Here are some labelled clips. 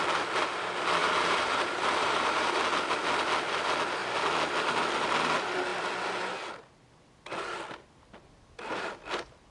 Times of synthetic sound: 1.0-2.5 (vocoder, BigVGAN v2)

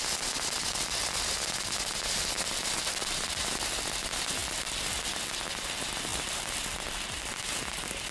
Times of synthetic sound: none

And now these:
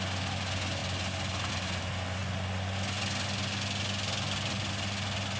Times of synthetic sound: none

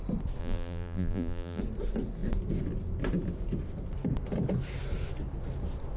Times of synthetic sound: 0.4-1.6 (vocoder, BigVGAN v2)